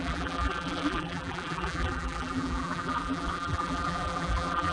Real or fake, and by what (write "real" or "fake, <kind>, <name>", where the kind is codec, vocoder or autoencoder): fake, vocoder, BigVGAN v2